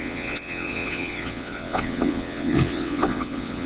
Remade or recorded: remade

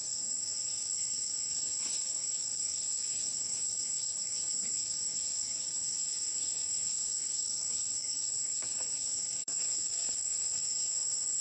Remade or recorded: remade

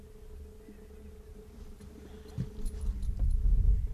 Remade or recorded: recorded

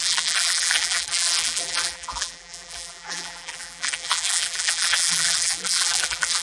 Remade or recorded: remade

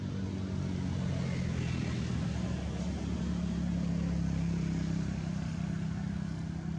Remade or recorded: recorded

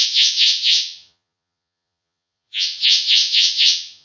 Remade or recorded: remade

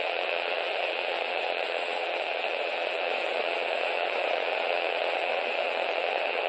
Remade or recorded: remade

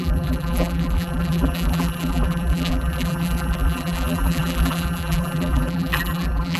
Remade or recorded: remade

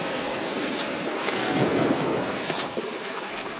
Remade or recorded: remade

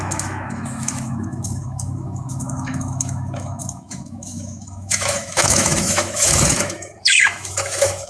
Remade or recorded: remade